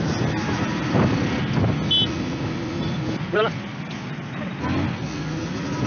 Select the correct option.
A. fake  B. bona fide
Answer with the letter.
B